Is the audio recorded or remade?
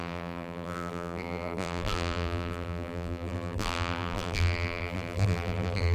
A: remade